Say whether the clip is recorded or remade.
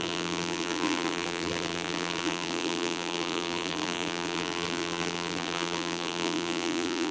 remade